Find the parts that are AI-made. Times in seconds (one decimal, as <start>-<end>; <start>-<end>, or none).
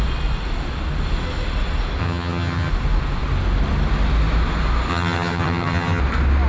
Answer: 2.0-2.7; 4.9-6.0